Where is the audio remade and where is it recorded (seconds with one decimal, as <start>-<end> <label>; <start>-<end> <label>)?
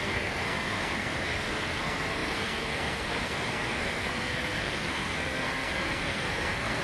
0.0-6.8 remade